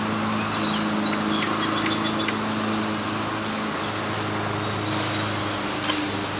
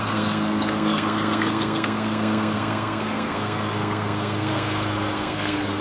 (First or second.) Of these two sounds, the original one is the first